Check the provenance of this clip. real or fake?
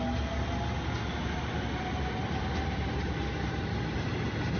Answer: real